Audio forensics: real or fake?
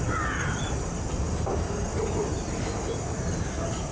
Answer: fake